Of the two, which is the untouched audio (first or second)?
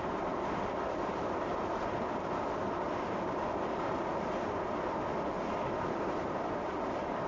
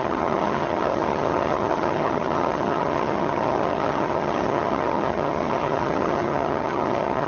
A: first